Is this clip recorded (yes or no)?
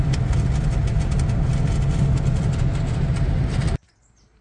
yes